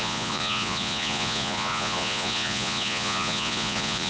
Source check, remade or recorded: remade